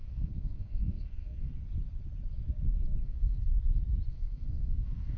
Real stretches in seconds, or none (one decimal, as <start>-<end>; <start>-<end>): 1.5-3.0; 3.6-4.1